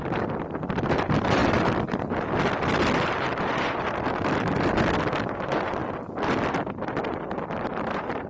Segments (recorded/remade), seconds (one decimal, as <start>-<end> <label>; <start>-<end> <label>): 0.0-8.3 recorded